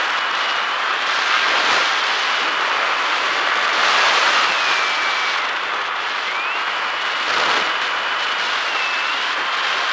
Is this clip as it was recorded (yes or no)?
yes